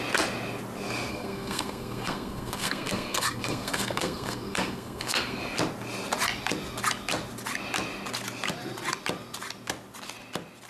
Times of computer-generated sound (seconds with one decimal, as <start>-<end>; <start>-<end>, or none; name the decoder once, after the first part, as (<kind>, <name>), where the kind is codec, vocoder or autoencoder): 1.1-5.4 (codec, SNAC)